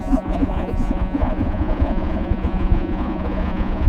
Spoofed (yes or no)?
yes